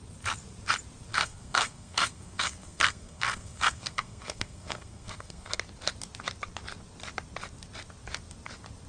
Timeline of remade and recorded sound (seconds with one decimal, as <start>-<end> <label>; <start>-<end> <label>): 0.0-1.1 recorded; 1.1-5.6 remade; 5.6-8.9 recorded